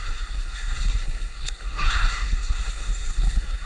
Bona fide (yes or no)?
no